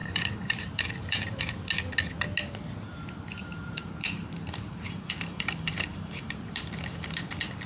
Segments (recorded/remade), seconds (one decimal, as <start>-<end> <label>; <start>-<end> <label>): 0.0-1.4 remade; 1.4-3.4 recorded; 3.4-7.3 remade; 7.3-7.7 recorded